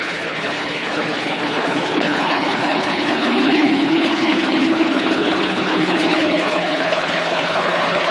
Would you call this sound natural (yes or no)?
no